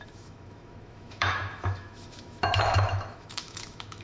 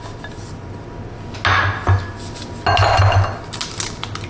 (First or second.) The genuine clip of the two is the second